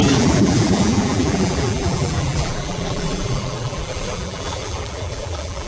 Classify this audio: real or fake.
fake